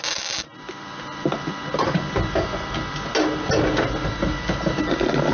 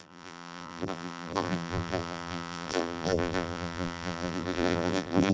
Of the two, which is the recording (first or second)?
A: first